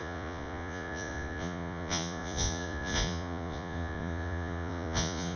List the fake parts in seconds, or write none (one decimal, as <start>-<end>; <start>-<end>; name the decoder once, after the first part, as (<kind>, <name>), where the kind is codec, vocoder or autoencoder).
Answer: 0.0-5.4 (vocoder, Vocos)